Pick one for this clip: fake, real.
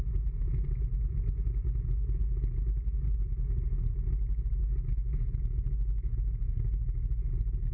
real